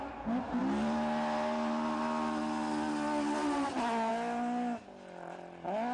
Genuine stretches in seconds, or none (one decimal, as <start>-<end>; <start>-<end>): 0.0-5.9